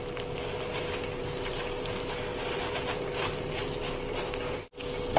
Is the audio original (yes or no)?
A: yes